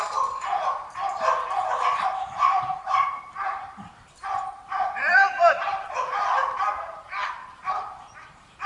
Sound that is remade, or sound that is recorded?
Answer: remade